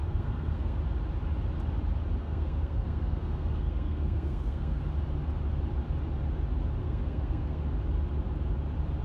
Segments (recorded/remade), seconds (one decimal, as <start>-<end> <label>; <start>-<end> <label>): 0.0-0.8 remade; 0.8-2.2 recorded; 2.2-4.8 remade; 4.8-6.8 recorded; 6.8-7.6 remade; 7.6-9.0 recorded